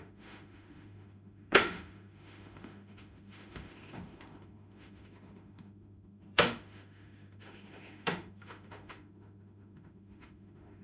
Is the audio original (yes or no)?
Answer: no